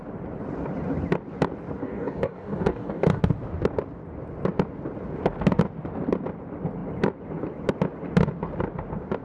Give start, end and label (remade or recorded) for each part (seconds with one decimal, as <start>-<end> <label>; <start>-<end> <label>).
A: 0.0-1.8 recorded; 1.8-3.2 remade; 3.2-9.2 recorded